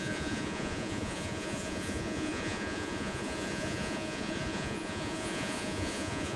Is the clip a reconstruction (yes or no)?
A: yes